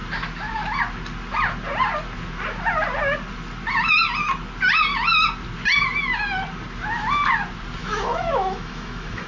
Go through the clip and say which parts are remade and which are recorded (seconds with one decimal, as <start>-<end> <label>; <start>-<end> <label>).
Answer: 0.0-7.8 recorded; 7.8-9.3 remade